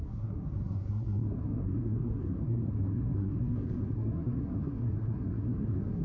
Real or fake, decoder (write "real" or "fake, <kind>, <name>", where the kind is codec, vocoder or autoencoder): fake, codec, SNAC